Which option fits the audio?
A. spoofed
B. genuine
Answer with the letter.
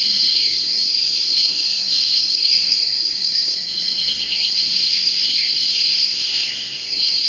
A